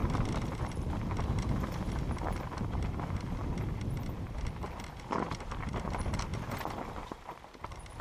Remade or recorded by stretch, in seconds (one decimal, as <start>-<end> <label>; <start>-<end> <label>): 0.0-1.9 remade; 1.9-3.4 recorded; 3.4-4.1 remade; 4.1-6.3 recorded; 6.3-8.0 remade